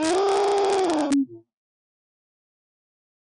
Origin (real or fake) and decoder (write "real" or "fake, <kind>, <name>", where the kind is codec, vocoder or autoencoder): real